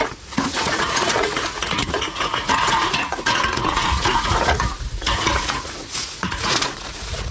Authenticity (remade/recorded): remade